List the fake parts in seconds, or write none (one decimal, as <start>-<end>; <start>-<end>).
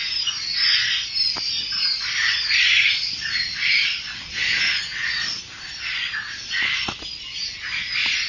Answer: none